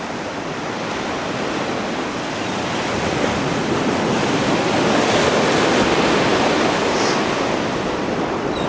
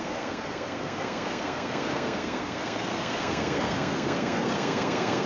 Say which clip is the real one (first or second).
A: first